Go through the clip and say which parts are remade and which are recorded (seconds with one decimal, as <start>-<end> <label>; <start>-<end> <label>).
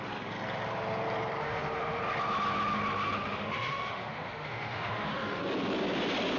0.0-1.4 recorded; 1.4-2.0 remade; 2.0-3.2 recorded; 3.2-5.4 remade; 5.4-6.4 recorded